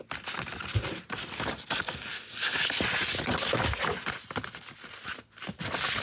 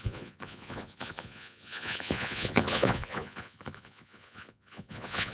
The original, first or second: first